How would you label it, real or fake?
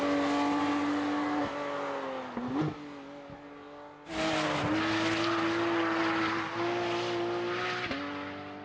real